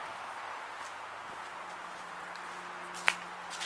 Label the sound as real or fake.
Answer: real